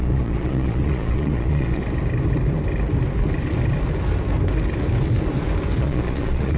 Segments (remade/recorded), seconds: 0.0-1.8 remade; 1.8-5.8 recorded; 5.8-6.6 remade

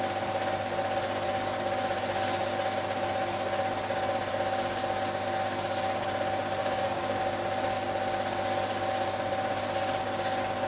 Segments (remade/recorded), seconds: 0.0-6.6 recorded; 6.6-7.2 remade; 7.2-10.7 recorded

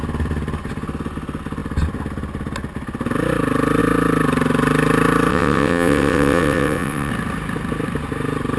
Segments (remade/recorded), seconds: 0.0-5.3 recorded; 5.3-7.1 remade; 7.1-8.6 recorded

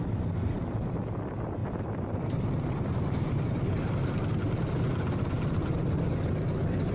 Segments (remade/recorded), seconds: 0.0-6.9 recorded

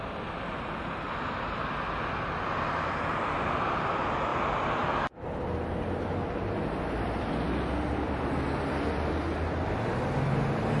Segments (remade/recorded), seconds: 0.0-10.8 recorded

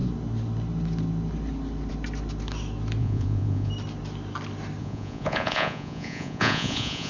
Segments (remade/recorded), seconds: 0.0-3.0 recorded; 3.0-3.7 remade; 3.7-4.8 recorded; 4.8-7.1 remade

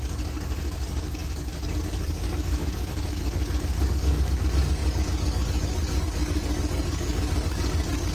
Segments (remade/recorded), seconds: 0.0-8.1 remade

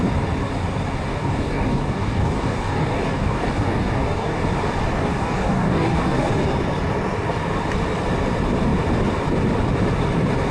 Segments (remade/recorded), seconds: 0.0-1.1 recorded; 1.1-4.4 remade; 4.4-5.0 recorded; 5.0-6.3 remade; 6.3-10.5 recorded